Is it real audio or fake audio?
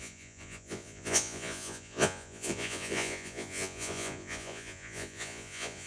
fake